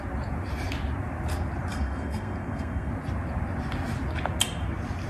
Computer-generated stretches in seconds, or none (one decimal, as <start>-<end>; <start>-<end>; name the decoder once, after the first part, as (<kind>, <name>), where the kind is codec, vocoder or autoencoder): 1.7-2.9 (codec, SNAC)